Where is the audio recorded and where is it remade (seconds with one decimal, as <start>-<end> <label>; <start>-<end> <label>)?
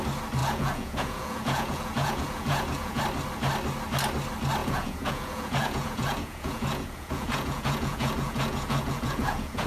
0.0-0.4 recorded; 0.4-3.0 remade; 3.0-4.6 recorded; 4.6-9.7 remade